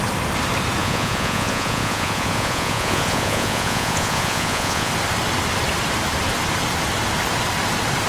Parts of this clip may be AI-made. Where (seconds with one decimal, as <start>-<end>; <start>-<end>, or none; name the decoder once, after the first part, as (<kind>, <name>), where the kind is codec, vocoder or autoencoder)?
0.8-4.9 (vocoder, Vocos)